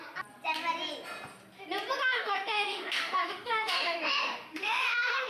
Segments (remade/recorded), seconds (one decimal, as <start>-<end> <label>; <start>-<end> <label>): 0.0-2.0 recorded; 2.0-5.3 remade